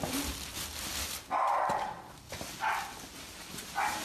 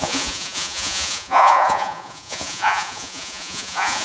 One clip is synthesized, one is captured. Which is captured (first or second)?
first